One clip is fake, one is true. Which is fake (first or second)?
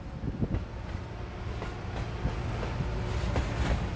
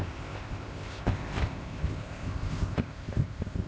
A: second